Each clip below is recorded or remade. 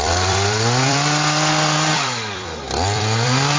remade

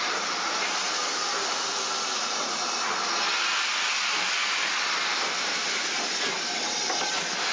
recorded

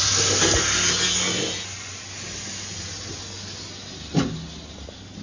recorded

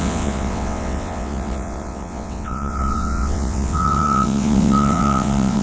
remade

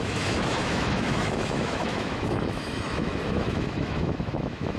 remade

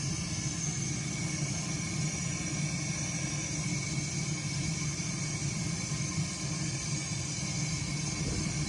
recorded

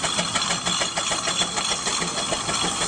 recorded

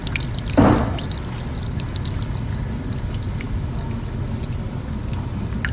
recorded